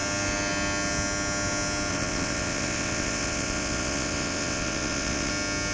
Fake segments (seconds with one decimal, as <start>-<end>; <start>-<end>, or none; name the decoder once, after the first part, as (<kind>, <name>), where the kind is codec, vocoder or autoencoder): 1.9-5.3 (vocoder, WaveNeXt)

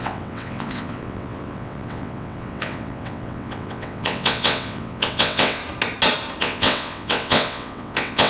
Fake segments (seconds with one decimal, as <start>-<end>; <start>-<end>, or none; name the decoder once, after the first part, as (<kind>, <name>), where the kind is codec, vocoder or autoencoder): 0.0-5.6 (vocoder, WaveNeXt); 6.4-8.3

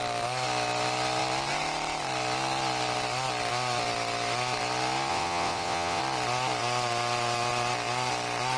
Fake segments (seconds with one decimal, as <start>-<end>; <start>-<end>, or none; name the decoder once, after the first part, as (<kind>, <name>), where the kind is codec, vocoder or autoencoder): 5.1-6.0 (vocoder, WaveNeXt)

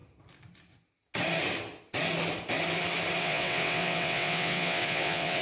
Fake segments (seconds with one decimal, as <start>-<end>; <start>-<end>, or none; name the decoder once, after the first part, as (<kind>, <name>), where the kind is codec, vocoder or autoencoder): 3.2-5.4 (vocoder, WaveNeXt)